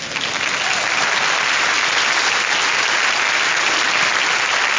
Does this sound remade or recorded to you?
recorded